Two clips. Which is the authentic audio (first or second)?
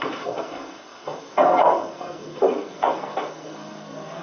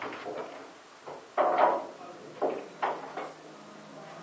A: second